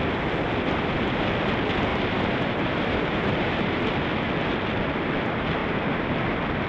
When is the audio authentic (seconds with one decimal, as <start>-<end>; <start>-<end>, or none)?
0.0-1.9; 3.8-5.6; 6.2-6.7